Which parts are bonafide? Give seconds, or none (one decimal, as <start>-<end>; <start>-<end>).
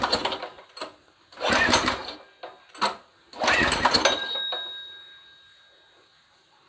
0.8-1.5; 2.0-6.0